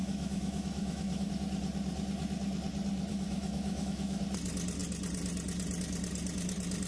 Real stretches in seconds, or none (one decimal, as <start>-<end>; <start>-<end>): 1.3-3.1; 4.2-6.9